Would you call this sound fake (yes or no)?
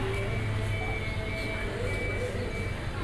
no